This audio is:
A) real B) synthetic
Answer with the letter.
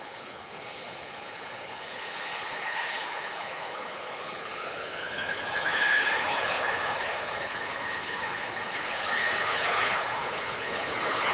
B